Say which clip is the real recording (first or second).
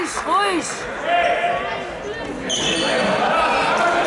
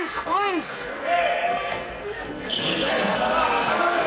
first